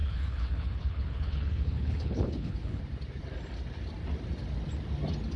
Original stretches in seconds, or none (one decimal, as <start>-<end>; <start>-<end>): 2.8-5.4